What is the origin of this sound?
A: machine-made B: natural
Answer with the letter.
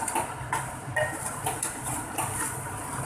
A